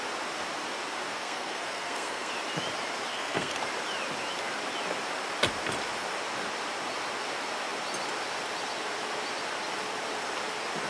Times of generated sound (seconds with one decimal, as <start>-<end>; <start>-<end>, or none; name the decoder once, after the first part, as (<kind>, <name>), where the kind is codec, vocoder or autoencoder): 1.1-2.3 (codec, SNAC); 3.1-3.6